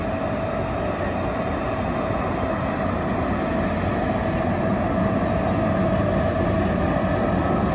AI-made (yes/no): no